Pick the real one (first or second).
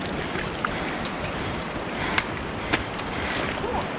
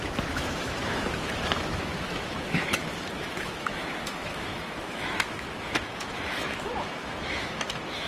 first